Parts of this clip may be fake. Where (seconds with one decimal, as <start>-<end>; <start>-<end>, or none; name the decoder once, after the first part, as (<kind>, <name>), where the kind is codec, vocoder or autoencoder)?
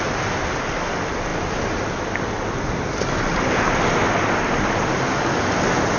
none